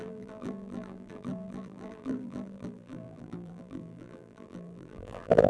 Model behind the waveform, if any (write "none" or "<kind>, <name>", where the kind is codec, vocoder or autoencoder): vocoder, BigVGAN v2